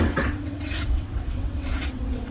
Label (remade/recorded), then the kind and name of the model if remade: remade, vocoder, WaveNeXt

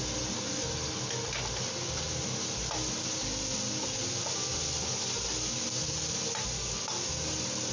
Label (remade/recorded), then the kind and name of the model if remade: recorded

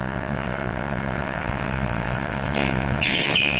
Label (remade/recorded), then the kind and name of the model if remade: remade, vocoder, WaveNeXt